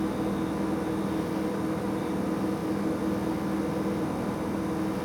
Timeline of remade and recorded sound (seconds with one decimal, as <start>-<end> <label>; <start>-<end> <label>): 0.0-5.0 recorded

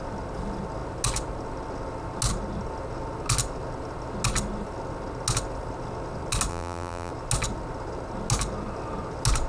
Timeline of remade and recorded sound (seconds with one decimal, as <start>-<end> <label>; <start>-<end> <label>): 0.0-6.5 recorded; 6.5-7.1 remade; 7.1-9.5 recorded

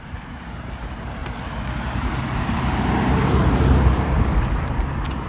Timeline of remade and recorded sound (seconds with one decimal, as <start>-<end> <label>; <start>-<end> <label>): 0.0-1.2 remade; 1.2-1.9 recorded; 1.9-5.3 remade